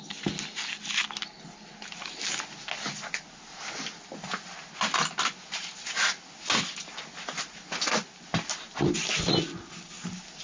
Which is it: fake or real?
real